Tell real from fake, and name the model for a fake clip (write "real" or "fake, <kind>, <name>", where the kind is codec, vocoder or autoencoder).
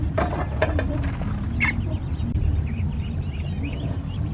real